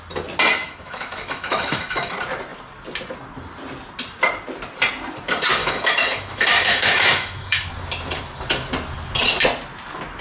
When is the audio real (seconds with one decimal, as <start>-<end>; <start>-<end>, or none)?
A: 0.0-0.6; 2.1-5.6; 7.7-10.2